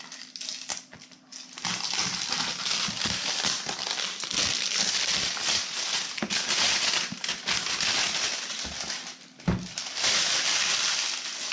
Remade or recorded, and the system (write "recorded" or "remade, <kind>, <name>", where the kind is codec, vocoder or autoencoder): recorded